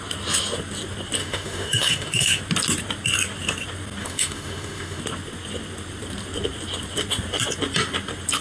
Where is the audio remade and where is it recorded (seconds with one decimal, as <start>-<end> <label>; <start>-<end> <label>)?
0.0-1.2 recorded; 1.2-2.4 remade; 2.4-4.0 recorded; 4.0-5.0 remade; 5.0-8.4 recorded